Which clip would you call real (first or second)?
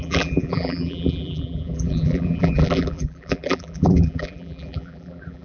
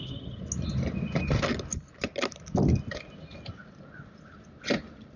second